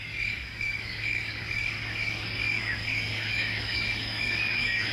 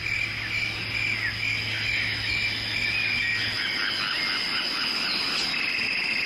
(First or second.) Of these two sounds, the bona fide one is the second